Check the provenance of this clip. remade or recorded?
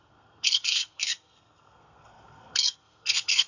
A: remade